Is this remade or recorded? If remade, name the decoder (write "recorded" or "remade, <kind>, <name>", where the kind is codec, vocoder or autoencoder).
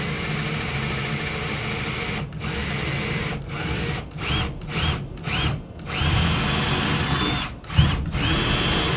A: recorded